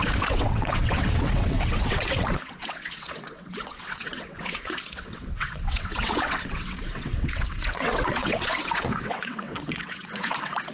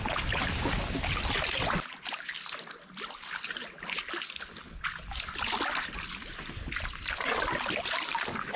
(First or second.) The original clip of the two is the second